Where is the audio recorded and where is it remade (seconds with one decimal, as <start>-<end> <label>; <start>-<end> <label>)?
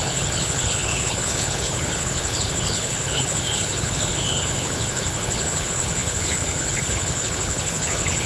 0.0-8.3 remade